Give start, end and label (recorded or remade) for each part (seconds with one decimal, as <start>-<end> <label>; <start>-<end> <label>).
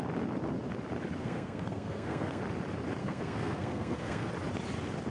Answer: 0.0-1.2 recorded; 1.2-2.4 remade; 2.4-3.0 recorded; 3.0-4.3 remade; 4.3-5.1 recorded